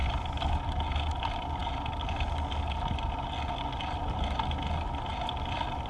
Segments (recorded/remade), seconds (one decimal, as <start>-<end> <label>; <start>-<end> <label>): 0.0-5.9 recorded